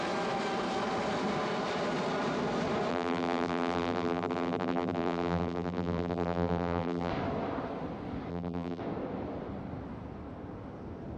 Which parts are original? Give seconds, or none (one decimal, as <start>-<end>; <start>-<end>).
0.0-2.9; 7.1-8.3; 8.8-11.2